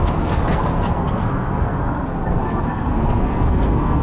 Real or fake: fake